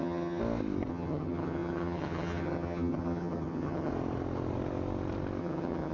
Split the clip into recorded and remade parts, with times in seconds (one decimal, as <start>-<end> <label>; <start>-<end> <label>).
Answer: 0.0-0.4 remade; 0.4-0.9 recorded; 0.9-3.9 remade; 3.9-5.4 recorded; 5.4-5.9 remade